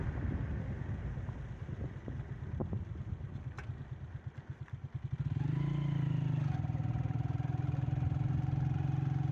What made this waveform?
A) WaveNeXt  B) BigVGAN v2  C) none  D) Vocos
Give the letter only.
C